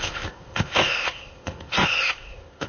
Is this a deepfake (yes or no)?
yes